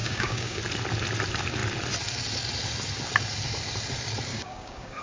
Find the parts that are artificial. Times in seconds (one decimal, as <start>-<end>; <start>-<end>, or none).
0.0-0.6; 4.3-5.0